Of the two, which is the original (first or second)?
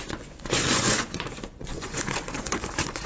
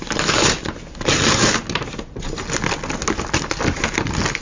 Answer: second